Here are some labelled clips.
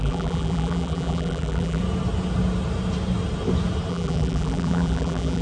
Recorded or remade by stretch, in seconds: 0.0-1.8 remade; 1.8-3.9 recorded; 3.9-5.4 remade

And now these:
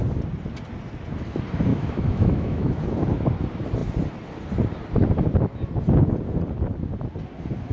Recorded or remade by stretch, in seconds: 0.0-1.7 recorded; 1.7-2.8 remade; 2.8-7.7 recorded

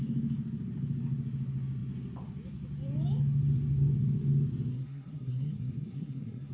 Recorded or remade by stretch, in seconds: 0.0-4.7 recorded; 4.7-6.5 remade

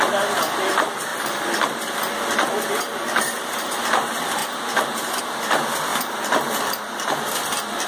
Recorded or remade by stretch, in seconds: 0.0-1.1 recorded; 1.1-2.7 remade; 2.7-5.9 recorded; 5.9-6.7 remade; 6.7-7.9 recorded

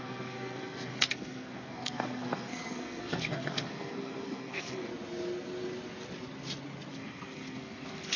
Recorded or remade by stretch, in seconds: 0.0-4.9 remade; 4.9-6.9 recorded; 6.9-8.2 remade

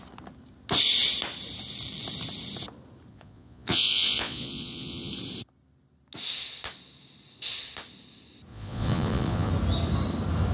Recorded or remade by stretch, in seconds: 0.0-3.1 recorded; 3.1-5.1 remade; 5.1-8.5 recorded; 8.5-9.5 remade; 9.5-10.5 recorded